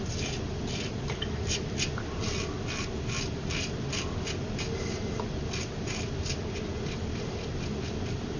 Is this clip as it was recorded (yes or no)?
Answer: yes